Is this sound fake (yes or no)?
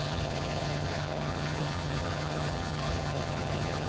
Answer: yes